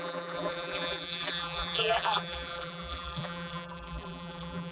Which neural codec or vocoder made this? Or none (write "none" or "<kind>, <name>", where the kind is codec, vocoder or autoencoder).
vocoder, BigVGAN v2